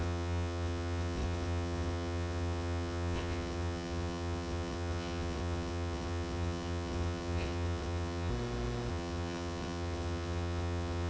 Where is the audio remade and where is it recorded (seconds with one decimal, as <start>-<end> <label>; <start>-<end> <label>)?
0.0-8.3 remade; 8.3-8.9 recorded; 8.9-11.1 remade

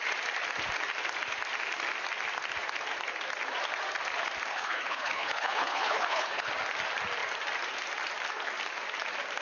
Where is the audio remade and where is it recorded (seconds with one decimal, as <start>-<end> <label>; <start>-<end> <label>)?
0.0-4.5 recorded; 4.5-6.5 remade; 6.5-9.4 recorded

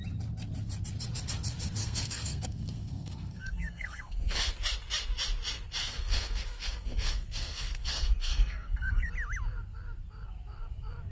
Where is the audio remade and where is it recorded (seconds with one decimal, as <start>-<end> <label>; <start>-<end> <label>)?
0.0-1.8 recorded; 1.8-4.5 remade; 4.5-5.8 recorded; 5.8-9.1 remade; 9.1-11.1 recorded

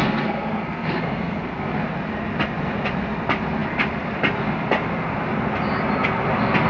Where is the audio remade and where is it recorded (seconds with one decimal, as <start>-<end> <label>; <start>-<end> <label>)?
0.0-1.8 remade; 1.8-6.7 recorded

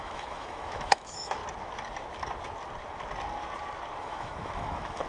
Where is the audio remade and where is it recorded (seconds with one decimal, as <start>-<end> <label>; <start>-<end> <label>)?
0.0-1.4 remade; 1.4-4.0 recorded; 4.0-5.1 remade

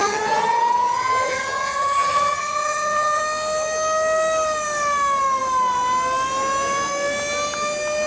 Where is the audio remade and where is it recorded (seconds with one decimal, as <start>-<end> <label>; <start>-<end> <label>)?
0.0-3.2 remade; 3.2-8.1 recorded

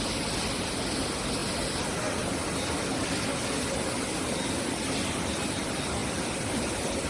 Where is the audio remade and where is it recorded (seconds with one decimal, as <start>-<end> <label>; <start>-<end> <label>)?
0.0-7.1 recorded

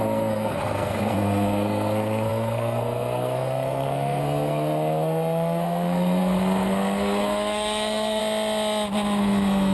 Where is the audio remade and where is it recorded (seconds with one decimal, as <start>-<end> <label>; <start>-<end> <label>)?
0.0-8.2 remade; 8.2-9.2 recorded; 9.2-9.7 remade